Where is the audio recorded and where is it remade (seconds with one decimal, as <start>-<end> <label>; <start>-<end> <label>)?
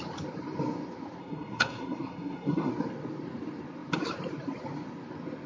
0.0-1.2 recorded; 1.2-2.7 remade; 2.7-5.5 recorded